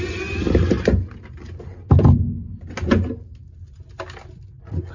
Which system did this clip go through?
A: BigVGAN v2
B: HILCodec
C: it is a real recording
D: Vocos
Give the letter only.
C